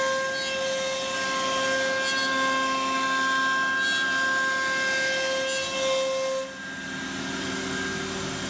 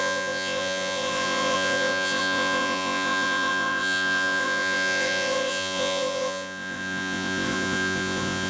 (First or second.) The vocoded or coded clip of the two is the second